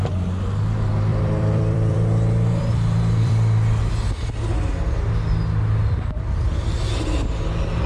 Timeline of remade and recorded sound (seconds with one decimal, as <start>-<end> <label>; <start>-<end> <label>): 0.0-1.1 recorded; 1.1-3.9 remade; 3.9-7.9 recorded